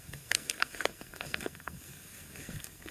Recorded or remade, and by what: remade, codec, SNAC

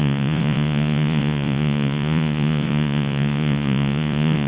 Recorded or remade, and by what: remade, vocoder, Vocos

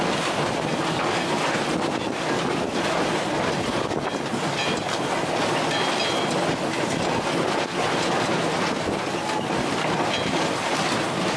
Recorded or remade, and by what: recorded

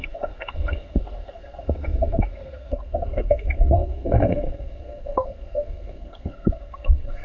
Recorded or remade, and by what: remade, codec, SNAC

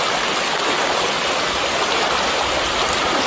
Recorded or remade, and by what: recorded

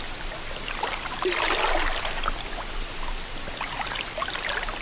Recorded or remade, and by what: recorded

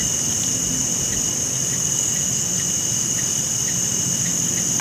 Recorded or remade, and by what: recorded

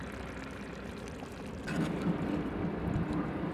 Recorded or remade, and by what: recorded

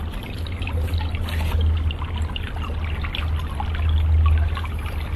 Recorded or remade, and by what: recorded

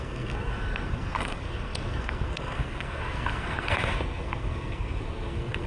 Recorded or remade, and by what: remade, codec, SNAC